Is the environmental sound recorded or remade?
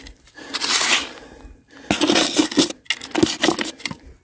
recorded